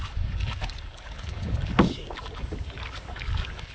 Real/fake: fake